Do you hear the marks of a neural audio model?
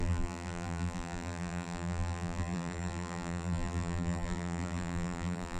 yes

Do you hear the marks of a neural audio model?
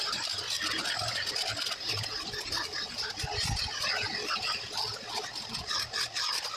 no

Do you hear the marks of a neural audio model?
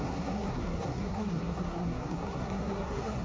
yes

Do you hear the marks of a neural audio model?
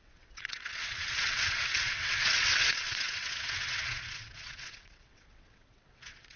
yes